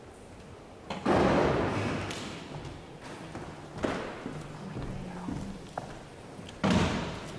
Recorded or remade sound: recorded